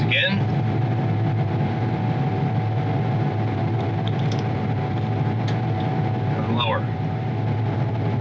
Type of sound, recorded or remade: recorded